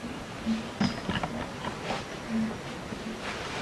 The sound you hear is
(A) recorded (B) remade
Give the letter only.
A